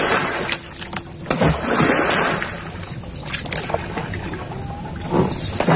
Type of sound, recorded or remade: recorded